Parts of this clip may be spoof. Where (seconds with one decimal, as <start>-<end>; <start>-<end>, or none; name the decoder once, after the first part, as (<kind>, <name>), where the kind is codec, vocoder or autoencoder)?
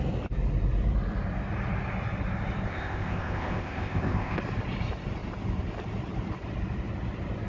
2.7-4.4 (codec, ZipCodec)